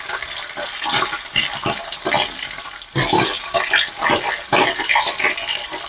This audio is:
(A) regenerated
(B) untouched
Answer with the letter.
B